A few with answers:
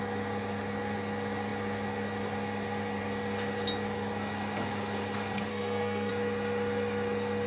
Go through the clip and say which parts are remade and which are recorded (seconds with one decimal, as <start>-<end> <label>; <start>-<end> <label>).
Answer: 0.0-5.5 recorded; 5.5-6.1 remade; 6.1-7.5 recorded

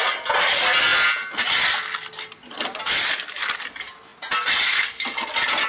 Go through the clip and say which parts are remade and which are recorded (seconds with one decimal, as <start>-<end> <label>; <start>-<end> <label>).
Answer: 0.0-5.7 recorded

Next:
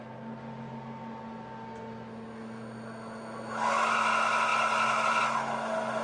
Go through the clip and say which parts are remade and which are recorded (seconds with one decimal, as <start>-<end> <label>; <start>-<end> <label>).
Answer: 0.0-6.0 recorded

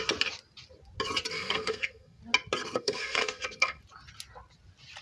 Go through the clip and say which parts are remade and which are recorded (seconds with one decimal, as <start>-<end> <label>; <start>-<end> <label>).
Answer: 0.0-1.3 recorded; 1.3-2.2 remade; 2.2-2.6 recorded; 2.6-3.8 remade; 3.8-5.0 recorded